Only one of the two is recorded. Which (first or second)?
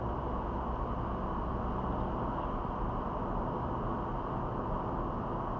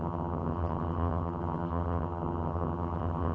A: first